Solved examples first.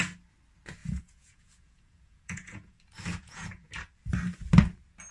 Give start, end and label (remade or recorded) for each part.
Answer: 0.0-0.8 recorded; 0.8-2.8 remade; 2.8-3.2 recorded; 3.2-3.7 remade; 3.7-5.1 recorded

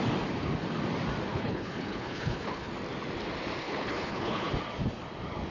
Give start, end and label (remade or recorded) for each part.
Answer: 0.0-1.3 recorded; 1.3-2.7 remade; 2.7-3.6 recorded; 3.6-4.5 remade; 4.5-5.5 recorded

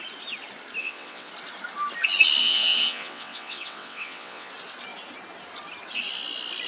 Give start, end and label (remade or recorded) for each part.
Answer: 0.0-0.8 recorded; 0.8-1.3 remade; 1.3-2.4 recorded; 2.4-4.5 remade; 4.5-6.7 recorded

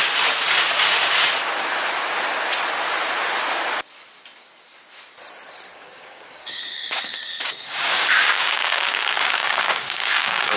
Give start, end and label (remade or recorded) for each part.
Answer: 0.0-5.7 recorded; 5.7-10.6 remade